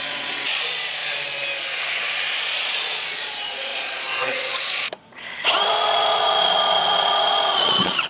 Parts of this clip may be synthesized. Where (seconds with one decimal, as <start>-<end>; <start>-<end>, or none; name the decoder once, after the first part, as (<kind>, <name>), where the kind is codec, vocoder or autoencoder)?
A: 0.0-1.0 (vocoder, Vocos); 2.6-8.1